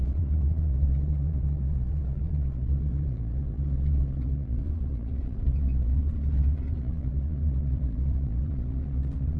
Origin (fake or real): fake